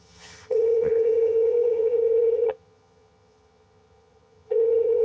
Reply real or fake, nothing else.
fake